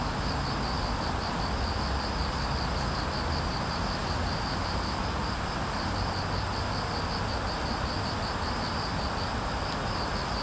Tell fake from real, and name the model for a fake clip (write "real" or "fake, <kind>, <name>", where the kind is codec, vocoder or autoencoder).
real